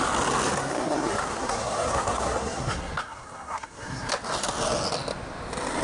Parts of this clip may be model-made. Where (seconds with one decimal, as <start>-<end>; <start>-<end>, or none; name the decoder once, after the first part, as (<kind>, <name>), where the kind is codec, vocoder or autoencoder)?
0.6-4.1 (codec, SNAC)